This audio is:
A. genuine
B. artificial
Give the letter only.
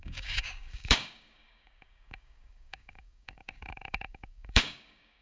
B